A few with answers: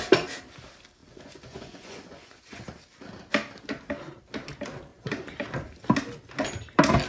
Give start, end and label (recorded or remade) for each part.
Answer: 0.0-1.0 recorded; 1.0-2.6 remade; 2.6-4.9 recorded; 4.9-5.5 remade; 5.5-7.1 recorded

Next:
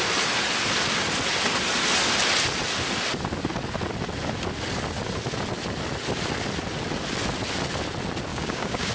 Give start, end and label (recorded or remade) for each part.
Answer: 0.0-8.3 recorded; 8.3-8.9 remade